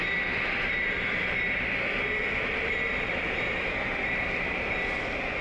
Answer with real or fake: fake